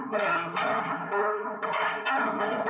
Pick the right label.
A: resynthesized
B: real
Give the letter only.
A